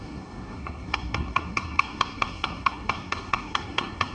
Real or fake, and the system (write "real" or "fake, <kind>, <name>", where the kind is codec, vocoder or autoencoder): fake, codec, SNAC